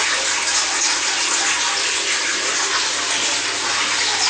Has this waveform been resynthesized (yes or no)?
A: no